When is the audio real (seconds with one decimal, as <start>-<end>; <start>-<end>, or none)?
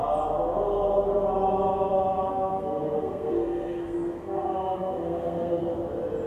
0.0-2.3; 5.6-6.3